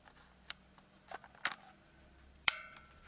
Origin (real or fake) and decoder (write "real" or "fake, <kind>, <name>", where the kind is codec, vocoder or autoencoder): fake, vocoder, BigVGAN v2